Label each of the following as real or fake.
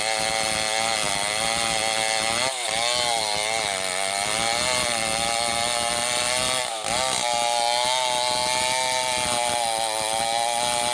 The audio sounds real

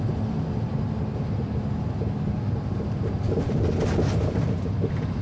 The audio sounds real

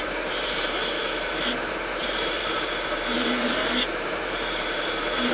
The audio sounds fake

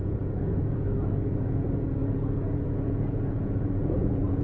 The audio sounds fake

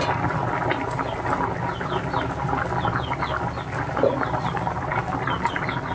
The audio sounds real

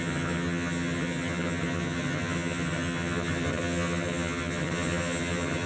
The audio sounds fake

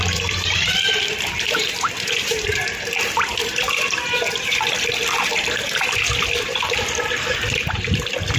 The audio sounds fake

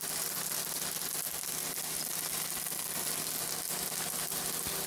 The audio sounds real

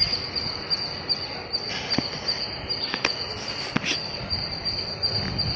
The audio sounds real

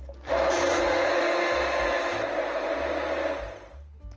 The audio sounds real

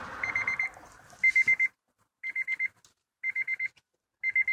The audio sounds real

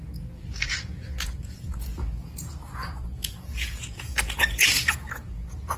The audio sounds fake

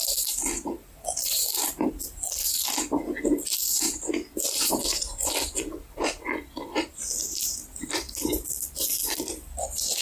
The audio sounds fake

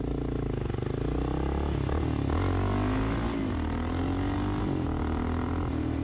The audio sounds real